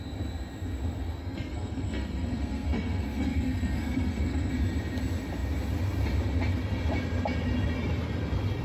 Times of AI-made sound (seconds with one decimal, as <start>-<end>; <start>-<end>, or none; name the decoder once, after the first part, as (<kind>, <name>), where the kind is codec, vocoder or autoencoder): 1.2-4.5 (codec, SNAC)